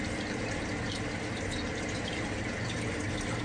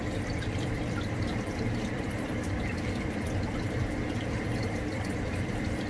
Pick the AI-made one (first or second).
second